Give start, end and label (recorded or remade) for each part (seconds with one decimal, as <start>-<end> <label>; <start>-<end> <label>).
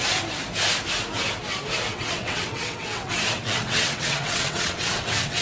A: 0.0-1.9 recorded; 1.9-5.4 remade